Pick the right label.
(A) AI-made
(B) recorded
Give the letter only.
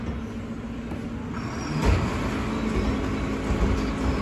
B